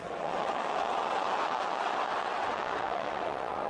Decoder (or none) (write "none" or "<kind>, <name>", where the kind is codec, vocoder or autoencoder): vocoder, WaveNeXt